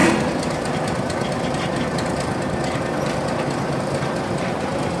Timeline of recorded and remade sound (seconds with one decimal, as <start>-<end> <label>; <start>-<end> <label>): 0.0-5.0 recorded

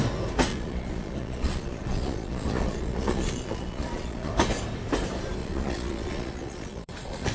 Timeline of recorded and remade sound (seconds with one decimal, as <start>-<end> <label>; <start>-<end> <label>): 0.0-0.5 recorded; 0.5-4.3 remade; 4.3-5.4 recorded; 5.4-7.3 remade

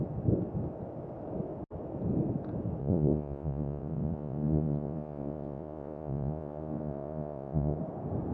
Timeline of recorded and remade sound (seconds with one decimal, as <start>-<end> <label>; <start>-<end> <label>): 0.0-2.8 recorded; 2.8-7.8 remade; 7.8-8.3 recorded

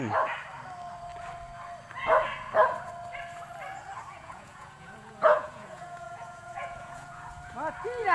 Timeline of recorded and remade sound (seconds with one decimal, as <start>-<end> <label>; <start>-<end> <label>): 0.0-4.1 recorded; 4.1-7.2 remade; 7.2-8.1 recorded